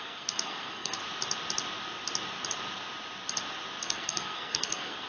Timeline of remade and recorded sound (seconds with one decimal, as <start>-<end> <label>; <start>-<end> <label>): 0.0-1.0 remade; 1.0-3.8 recorded; 3.8-5.1 remade